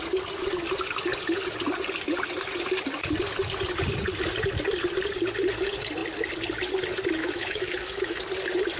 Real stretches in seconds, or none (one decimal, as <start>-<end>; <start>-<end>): 0.0-7.2; 8.2-8.8